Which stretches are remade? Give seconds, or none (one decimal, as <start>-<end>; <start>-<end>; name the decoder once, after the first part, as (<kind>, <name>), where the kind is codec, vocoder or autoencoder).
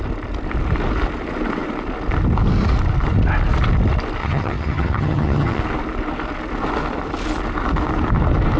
4.2-5.6 (vocoder, HiFi-GAN)